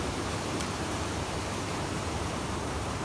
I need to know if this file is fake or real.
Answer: fake